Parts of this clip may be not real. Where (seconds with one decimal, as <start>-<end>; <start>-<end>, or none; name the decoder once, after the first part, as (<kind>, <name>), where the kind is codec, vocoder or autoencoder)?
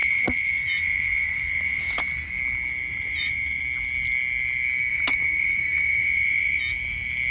0.0-1.8 (vocoder, BigVGAN v2); 2.9-3.6; 4.9-6.6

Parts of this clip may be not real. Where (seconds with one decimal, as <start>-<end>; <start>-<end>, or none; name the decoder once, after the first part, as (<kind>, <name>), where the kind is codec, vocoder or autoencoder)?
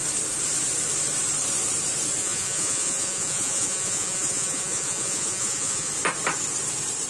2.2-5.9 (vocoder, Vocos)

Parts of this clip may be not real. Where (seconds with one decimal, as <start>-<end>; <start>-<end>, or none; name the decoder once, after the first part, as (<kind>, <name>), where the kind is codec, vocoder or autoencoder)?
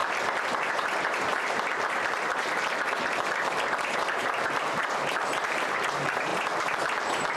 0.6-7.4 (vocoder, BigVGAN v2)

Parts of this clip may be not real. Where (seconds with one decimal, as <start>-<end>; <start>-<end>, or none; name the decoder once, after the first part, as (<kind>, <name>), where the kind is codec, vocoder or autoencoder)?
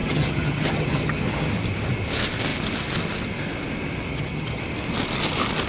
0.0-1.5 (vocoder, HiFi-GAN); 4.1-4.6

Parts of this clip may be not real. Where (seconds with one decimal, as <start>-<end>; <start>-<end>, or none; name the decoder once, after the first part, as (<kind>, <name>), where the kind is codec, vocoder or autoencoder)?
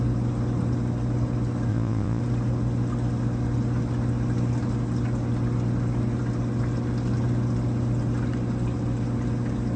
1.7-2.2 (vocoder, Vocos)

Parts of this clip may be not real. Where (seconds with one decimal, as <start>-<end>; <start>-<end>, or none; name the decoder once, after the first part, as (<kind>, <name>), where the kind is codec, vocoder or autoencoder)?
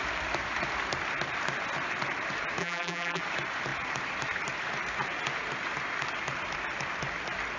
2.6-3.2 (vocoder, BigVGAN v2)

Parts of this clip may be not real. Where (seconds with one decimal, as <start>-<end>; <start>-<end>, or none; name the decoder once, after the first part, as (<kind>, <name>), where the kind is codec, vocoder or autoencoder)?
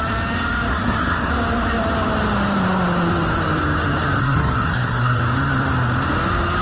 0.7-1.3 (codec, SNAC); 4.2-5.2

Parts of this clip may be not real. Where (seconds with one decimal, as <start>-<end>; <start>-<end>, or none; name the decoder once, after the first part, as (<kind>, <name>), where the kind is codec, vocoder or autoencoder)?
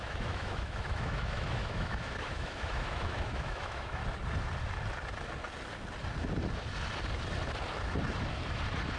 0.0-4.0 (autoencoder, DAC-VAE)